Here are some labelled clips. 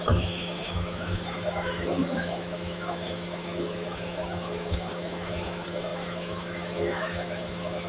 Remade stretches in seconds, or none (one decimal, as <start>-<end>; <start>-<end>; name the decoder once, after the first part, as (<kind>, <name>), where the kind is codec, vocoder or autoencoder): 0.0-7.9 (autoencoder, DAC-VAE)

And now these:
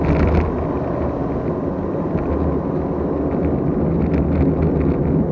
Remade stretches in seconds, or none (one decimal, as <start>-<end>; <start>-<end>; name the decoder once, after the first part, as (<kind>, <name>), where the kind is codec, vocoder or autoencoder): none

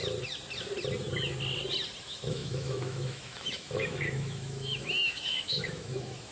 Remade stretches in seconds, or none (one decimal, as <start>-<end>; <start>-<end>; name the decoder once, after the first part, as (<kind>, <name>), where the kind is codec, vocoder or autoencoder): 2.0-6.3 (autoencoder, DAC-VAE)

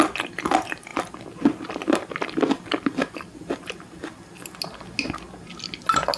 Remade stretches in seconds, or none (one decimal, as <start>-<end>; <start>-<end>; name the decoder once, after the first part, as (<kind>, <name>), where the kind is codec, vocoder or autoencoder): none

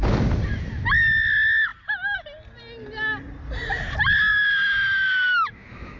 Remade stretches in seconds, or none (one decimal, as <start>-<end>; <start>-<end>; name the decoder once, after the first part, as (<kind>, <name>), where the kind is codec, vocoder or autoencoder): 4.3-6.0 (autoencoder, DAC-VAE)

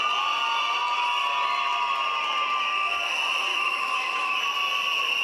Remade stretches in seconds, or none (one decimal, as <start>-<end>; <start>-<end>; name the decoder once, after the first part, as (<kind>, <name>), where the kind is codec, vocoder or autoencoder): 3.5-4.4 (autoencoder, DAC-VAE)